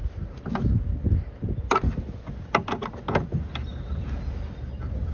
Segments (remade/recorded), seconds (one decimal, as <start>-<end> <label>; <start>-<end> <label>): 0.0-5.1 recorded